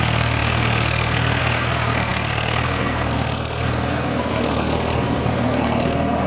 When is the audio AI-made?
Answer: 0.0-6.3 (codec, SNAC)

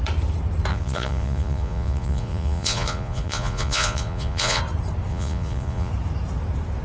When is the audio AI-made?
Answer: 0.7-4.6 (vocoder, Vocos); 5.1-5.9

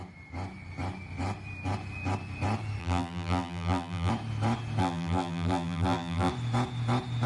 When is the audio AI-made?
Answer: 2.8-4.1 (vocoder, BigVGAN v2); 4.8-6.3